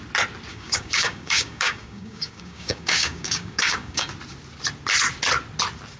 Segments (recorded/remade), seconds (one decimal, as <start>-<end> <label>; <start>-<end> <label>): 0.0-0.5 recorded; 0.5-4.1 remade; 4.1-6.0 recorded